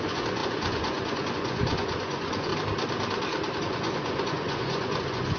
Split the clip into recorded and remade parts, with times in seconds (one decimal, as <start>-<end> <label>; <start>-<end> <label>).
0.0-2.5 remade; 2.5-3.6 recorded; 3.6-5.4 remade